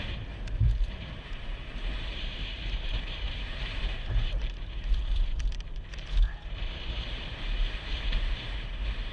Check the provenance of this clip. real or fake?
fake